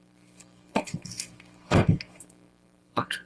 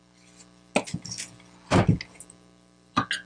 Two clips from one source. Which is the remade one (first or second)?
first